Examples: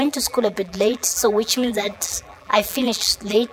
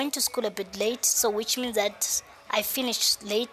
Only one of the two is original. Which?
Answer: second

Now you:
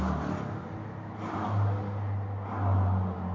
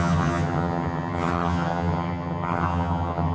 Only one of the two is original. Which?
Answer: first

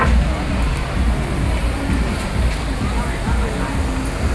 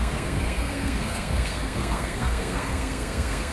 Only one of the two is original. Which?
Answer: first